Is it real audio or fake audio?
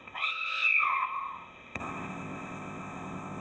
fake